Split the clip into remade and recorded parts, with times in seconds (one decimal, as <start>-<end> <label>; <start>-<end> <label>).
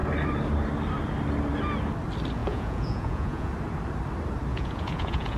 0.0-2.4 recorded; 2.4-3.5 remade; 3.5-4.5 recorded; 4.5-5.4 remade